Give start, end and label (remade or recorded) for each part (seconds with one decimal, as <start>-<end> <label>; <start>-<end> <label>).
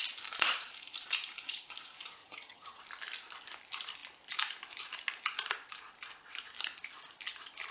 0.0-2.2 recorded; 2.2-2.8 remade; 2.8-7.7 recorded